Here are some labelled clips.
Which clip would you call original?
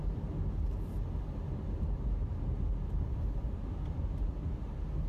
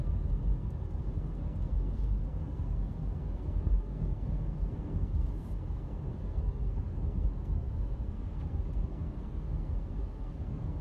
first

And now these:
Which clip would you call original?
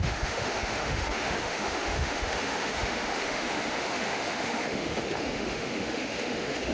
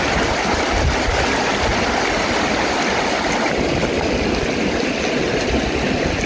second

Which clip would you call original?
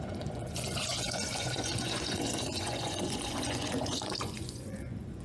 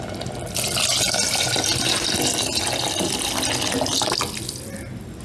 second